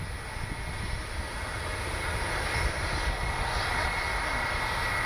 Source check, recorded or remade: recorded